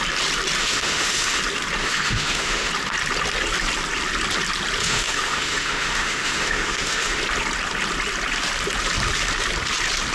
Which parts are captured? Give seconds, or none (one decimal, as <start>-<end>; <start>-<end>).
0.0-0.6; 1.4-1.8; 2.7-4.8; 7.2-10.1